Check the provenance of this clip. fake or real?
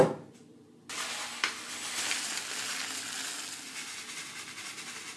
real